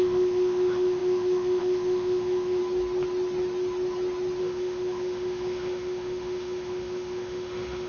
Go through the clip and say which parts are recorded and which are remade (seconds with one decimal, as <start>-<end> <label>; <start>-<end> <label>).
0.0-2.6 remade; 2.6-4.4 recorded; 4.4-7.9 remade